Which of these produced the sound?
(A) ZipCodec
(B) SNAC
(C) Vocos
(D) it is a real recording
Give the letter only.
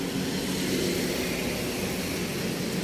D